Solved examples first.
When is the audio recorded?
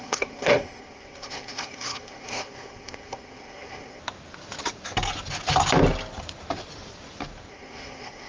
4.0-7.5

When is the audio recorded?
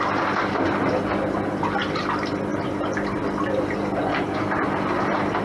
0.0-5.4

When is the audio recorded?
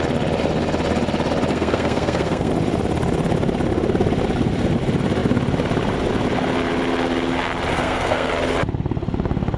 0.0-1.5; 2.5-7.7; 8.3-9.6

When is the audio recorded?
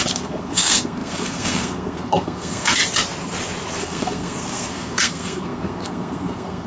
2.8-3.8